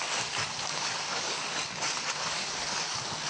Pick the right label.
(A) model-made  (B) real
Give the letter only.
A